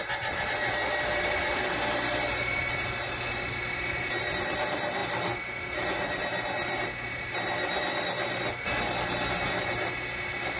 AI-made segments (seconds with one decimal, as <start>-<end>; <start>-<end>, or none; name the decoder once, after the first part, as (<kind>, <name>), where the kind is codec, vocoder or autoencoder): none